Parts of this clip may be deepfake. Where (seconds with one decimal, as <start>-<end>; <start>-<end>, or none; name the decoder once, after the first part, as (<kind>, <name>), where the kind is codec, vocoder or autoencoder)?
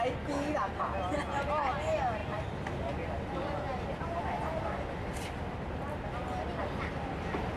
none